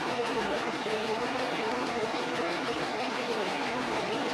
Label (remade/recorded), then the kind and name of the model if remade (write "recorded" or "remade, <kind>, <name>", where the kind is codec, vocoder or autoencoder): remade, codec, SNAC